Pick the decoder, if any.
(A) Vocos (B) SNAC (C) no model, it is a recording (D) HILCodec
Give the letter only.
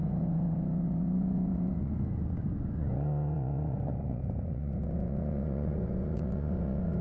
A